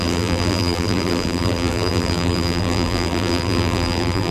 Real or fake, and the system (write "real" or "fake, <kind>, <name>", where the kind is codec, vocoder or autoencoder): fake, vocoder, BigVGAN v2